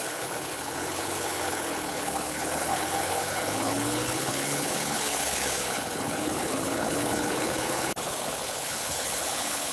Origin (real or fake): fake